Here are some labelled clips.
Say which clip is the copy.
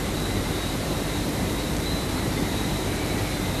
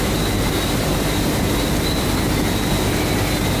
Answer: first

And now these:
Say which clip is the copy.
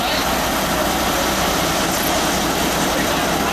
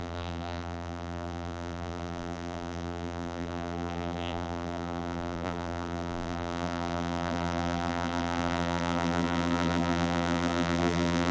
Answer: second